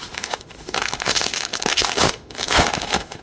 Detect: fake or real fake